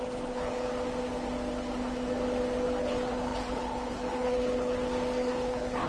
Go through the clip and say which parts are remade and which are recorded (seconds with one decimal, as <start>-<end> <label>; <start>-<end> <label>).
0.0-0.7 remade; 0.7-2.8 recorded; 2.8-4.7 remade; 4.7-5.2 recorded; 5.2-5.9 remade